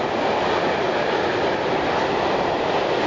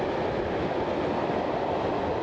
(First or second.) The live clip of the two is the first